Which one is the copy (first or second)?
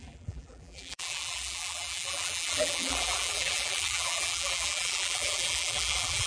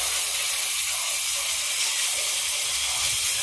first